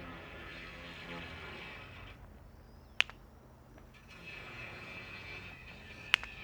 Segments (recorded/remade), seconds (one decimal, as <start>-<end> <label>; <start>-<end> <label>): 0.0-0.5 remade; 0.5-3.9 recorded; 3.9-5.6 remade; 5.6-6.4 recorded